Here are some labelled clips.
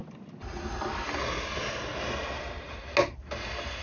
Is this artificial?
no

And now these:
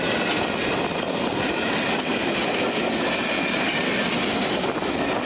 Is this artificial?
no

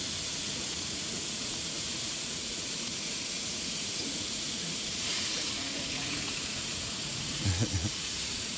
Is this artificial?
yes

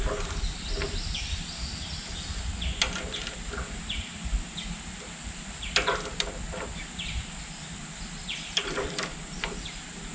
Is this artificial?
no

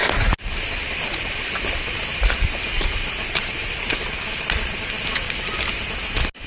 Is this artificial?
no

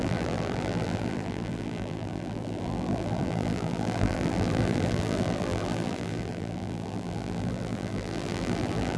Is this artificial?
yes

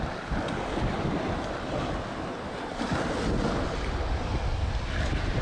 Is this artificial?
no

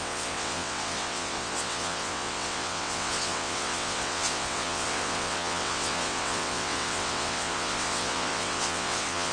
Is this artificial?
yes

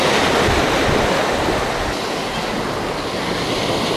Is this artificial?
no